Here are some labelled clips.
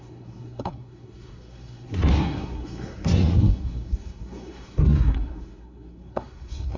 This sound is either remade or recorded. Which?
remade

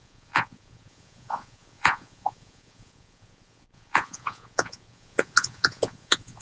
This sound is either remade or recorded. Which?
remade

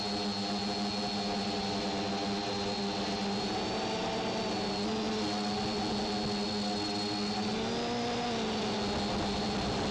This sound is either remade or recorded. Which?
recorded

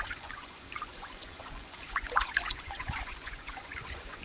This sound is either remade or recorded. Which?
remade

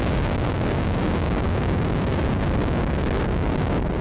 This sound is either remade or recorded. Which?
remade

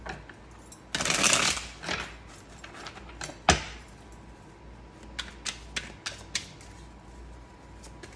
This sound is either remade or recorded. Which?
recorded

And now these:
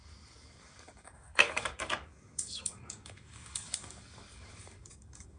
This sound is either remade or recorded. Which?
remade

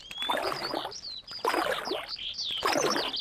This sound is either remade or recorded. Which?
recorded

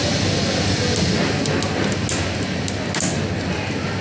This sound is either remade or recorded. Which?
recorded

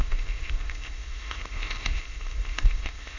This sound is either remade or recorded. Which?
remade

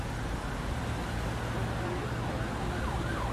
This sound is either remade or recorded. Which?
recorded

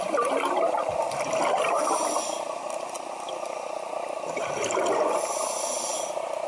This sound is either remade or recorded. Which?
recorded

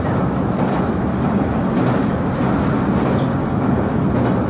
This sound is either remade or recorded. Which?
recorded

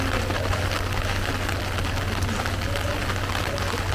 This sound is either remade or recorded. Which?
recorded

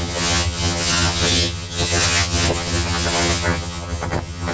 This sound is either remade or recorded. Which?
remade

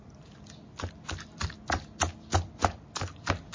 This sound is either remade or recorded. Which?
recorded